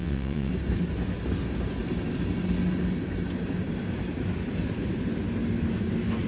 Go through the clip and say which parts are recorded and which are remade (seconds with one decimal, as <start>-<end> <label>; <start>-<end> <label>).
0.0-0.5 remade; 0.5-6.3 recorded